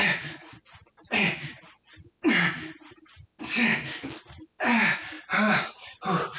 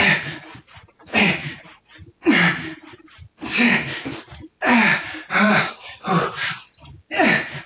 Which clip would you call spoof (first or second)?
second